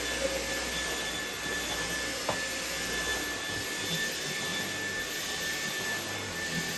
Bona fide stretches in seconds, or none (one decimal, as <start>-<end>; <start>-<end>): 0.0-6.8

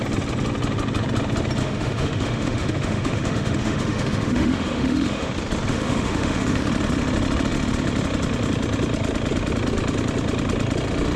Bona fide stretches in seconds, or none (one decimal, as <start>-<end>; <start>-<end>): 0.0-1.6; 5.3-5.7; 6.7-11.2

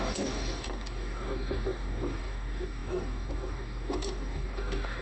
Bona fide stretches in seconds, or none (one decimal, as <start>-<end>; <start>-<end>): none

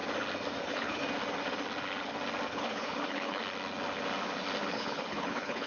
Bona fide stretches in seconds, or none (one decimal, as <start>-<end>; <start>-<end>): 0.0-0.6; 1.0-2.5; 3.4-4.7